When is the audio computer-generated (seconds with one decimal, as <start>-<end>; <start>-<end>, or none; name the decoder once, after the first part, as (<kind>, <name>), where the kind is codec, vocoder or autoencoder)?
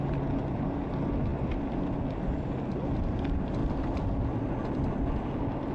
none